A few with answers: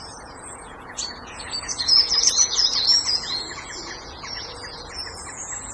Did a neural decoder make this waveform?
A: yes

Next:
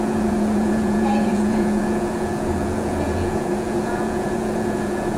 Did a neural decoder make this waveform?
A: yes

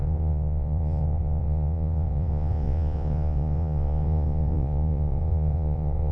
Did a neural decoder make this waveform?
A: yes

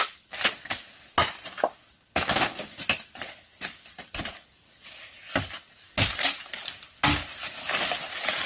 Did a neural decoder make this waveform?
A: no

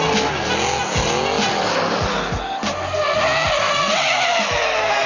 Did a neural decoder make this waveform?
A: no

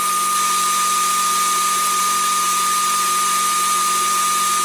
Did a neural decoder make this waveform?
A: no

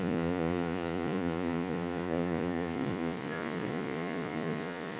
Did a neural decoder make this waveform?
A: yes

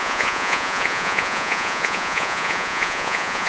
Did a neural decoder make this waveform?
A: yes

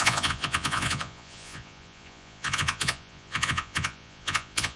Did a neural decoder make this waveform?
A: yes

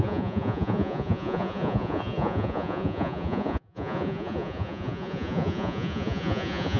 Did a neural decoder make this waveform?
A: yes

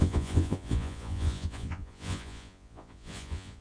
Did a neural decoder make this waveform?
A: yes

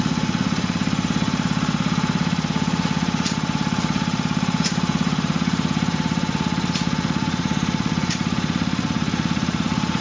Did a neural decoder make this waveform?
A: yes